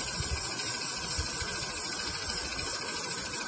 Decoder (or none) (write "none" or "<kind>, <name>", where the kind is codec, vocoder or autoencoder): none